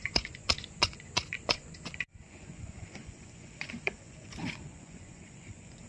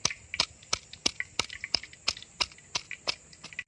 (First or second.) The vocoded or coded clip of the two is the first